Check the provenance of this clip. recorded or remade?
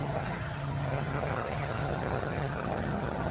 remade